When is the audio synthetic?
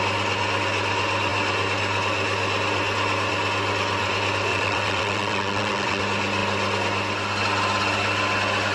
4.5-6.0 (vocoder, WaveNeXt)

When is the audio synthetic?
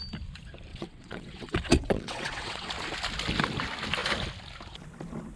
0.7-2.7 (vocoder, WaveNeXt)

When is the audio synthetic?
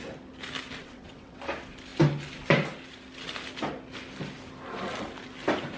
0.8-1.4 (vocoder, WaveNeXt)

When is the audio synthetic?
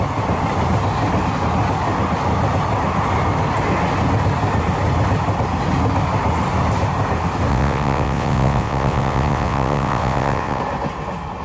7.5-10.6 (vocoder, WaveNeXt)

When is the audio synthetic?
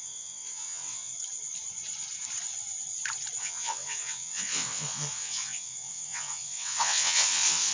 0.0-1.1 (vocoder, WaveNeXt); 3.4-7.7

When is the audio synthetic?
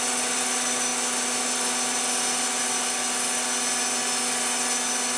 none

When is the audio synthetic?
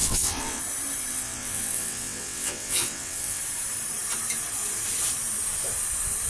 0.0-0.6 (vocoder, WaveNeXt); 1.1-3.4